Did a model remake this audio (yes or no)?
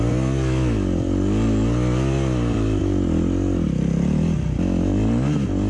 no